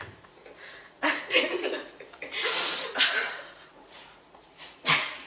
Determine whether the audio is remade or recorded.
remade